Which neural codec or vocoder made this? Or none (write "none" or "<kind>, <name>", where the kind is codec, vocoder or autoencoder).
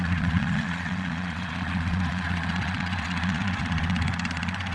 vocoder, Vocos